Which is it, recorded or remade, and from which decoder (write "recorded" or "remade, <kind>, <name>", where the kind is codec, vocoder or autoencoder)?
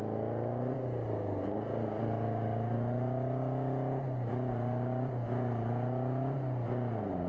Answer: recorded